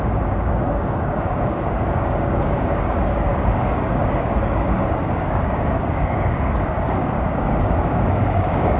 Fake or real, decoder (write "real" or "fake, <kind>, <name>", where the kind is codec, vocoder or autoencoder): fake, codec, DAC